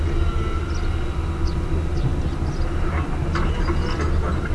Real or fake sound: real